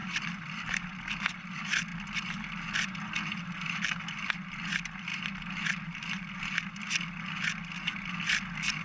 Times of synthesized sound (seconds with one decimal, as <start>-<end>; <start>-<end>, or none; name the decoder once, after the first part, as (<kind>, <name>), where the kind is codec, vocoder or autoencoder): 0.0-0.7 (vocoder, BigVGAN v2); 1.9-2.5